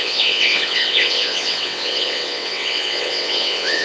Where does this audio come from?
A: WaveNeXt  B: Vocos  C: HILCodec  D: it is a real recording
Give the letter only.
A